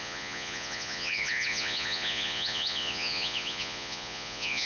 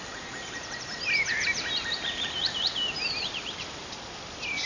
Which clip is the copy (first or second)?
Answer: first